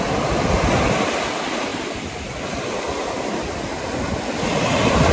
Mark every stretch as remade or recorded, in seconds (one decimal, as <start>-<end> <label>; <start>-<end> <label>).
0.0-5.1 recorded